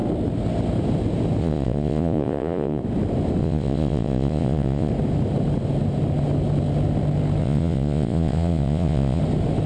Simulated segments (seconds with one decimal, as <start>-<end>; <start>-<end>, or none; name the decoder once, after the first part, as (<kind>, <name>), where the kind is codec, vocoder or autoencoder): 1.4-2.8 (vocoder, Vocos); 3.4-4.9; 7.4-9.2